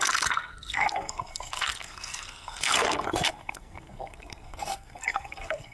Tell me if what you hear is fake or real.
fake